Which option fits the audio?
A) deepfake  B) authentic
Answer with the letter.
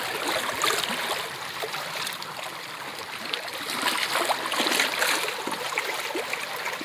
B